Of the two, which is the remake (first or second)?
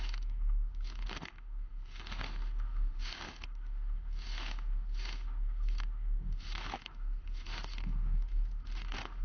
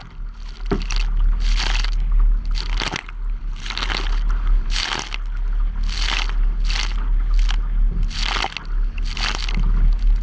first